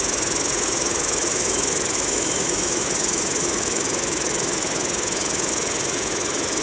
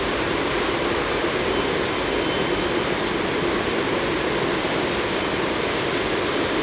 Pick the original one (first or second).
second